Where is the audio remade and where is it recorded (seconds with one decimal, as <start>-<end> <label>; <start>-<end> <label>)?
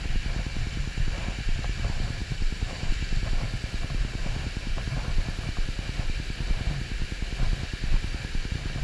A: 0.0-2.2 recorded; 2.2-2.9 remade; 2.9-4.2 recorded; 4.2-5.5 remade; 5.5-8.8 recorded